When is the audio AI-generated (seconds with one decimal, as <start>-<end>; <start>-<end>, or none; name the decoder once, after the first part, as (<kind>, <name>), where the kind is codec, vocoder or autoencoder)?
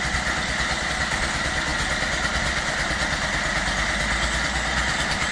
none